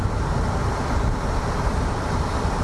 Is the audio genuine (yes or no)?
yes